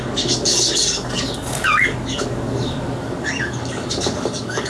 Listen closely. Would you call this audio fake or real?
fake